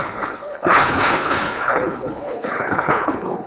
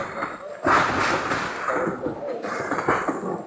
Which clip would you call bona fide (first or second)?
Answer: second